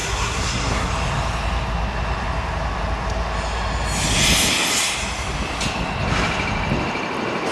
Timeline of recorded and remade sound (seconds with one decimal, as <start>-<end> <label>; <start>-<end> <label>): 0.0-0.9 remade; 0.9-7.5 recorded